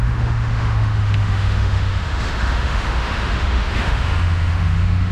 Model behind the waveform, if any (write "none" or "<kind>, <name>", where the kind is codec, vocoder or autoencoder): autoencoder, DAC-VAE